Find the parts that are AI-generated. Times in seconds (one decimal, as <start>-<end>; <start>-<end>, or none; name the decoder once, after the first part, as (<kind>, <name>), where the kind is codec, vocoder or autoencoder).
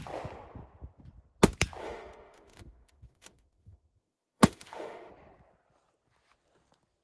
1.8-5.1 (autoencoder, DAC-VAE)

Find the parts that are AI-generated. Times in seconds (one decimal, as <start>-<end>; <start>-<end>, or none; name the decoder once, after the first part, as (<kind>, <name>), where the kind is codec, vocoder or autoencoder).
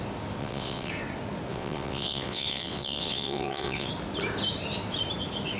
0.4-0.9 (vocoder, WaveNeXt); 1.5-3.9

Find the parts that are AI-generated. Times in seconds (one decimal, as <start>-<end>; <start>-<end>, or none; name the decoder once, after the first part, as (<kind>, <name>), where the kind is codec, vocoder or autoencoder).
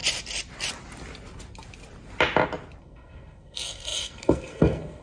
2.8-5.0 (codec, SNAC)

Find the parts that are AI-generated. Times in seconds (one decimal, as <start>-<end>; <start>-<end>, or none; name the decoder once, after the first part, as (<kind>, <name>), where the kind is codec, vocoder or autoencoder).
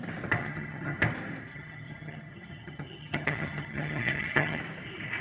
0.4-1.0 (vocoder, HiFi-GAN); 1.5-4.6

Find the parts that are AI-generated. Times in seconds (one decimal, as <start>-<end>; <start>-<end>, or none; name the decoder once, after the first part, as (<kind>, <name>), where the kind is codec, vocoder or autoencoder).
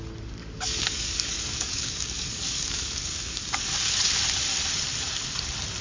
0.4-3.9 (codec, DAC)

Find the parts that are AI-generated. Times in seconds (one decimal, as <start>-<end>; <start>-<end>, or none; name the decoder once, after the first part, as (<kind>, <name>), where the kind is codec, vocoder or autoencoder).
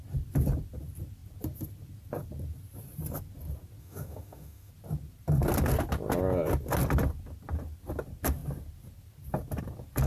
3.8-4.7 (autoencoder, DAC-VAE)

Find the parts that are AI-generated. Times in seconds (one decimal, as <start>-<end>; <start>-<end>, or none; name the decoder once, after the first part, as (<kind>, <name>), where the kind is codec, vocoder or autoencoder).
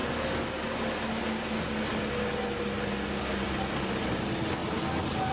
none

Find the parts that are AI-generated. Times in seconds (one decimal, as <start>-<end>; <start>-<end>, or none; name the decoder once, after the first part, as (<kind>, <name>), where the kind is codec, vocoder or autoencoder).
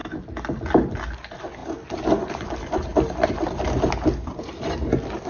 none